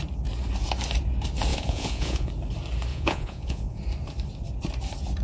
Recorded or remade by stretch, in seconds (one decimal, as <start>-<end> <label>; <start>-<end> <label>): 0.0-1.5 recorded; 1.5-2.3 remade; 2.3-2.9 recorded; 2.9-3.8 remade; 3.8-5.2 recorded